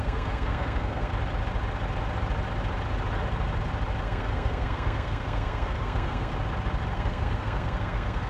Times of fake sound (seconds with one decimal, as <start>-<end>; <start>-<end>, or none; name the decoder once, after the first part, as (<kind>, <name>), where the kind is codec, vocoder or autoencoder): 0.0-1.1 (codec, SNAC); 4.0-6.3; 6.9-8.3